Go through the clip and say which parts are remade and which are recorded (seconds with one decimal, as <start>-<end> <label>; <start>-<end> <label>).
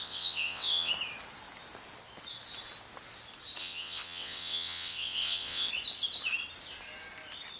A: 0.0-0.9 remade; 0.9-3.6 recorded; 3.6-5.7 remade; 5.7-7.6 recorded